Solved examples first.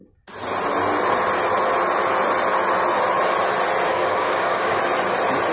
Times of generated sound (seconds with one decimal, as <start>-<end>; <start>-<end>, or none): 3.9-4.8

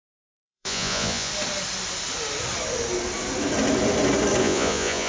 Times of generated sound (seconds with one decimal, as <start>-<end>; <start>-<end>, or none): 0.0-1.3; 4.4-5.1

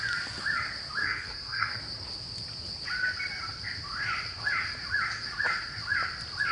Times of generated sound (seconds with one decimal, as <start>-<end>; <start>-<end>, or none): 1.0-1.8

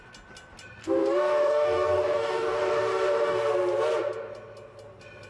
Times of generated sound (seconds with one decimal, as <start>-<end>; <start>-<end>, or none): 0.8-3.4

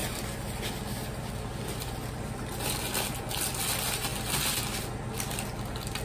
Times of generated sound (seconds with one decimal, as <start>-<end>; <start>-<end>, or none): none